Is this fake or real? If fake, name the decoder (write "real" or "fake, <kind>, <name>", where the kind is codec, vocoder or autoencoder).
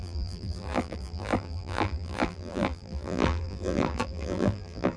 fake, vocoder, BigVGAN v2